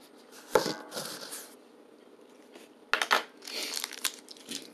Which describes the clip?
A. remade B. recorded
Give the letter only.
B